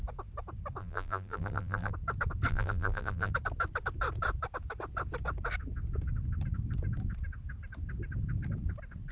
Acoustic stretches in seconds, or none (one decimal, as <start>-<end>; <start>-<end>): 0.0-0.8; 1.9-2.5; 3.3-9.1